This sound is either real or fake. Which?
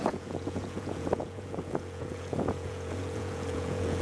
fake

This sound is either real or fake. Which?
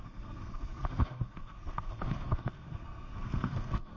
fake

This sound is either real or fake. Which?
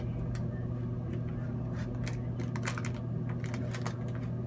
real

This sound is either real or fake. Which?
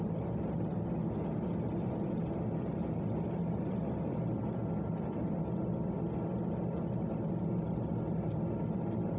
real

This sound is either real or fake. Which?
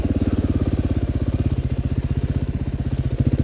real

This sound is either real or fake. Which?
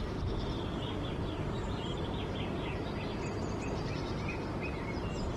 real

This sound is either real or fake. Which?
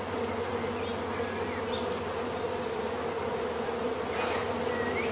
real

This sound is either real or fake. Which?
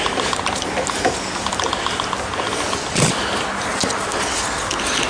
real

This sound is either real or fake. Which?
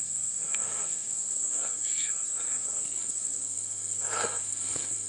fake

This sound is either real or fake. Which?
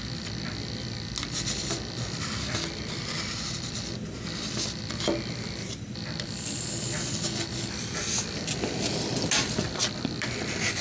real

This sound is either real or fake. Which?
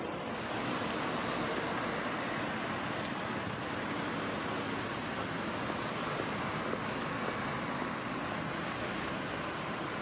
real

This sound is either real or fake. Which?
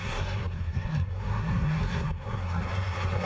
fake